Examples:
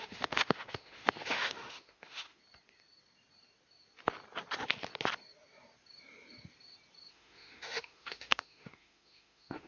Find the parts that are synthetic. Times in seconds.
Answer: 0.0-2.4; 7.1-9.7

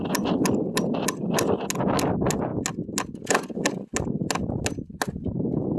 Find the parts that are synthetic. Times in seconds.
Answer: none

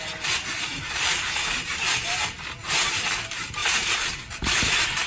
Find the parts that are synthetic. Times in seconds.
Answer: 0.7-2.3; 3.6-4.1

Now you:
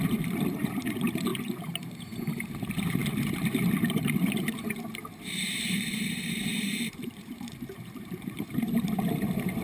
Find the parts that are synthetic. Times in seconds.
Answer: 0.0-9.6

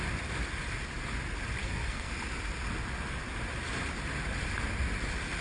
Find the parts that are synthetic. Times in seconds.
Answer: 1.6-2.1

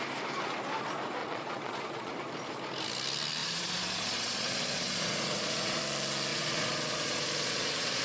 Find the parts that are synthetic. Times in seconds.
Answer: 1.2-2.1; 3.4-5.8; 6.3-8.0

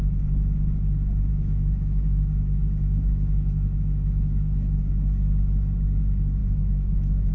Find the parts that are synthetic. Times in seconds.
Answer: 1.3-4.9; 6.4-7.3

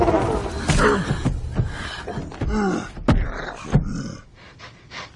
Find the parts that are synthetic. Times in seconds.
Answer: none